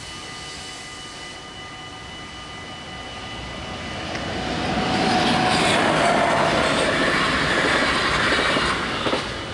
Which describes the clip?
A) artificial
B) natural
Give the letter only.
B